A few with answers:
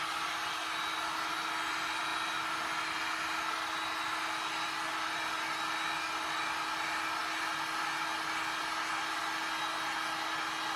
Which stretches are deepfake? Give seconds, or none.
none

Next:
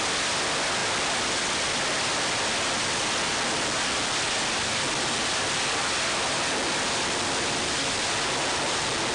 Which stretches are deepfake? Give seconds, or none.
none

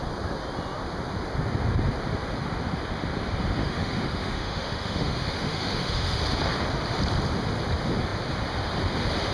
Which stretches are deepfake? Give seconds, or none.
3.6-6.2 (autoencoder, DAC-VAE)

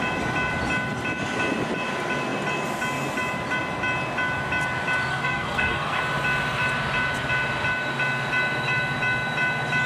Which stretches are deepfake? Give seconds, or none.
5.1-6.0 (codec, SNAC)

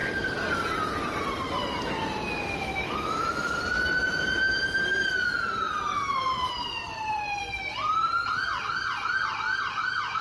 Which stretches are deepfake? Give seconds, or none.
0.0-2.7 (vocoder, BigVGAN v2); 6.1-7.7; 8.4-10.2